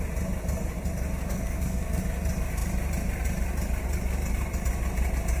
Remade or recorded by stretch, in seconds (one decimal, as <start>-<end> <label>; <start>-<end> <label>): 0.0-1.3 recorded; 1.3-2.0 remade; 2.0-5.4 recorded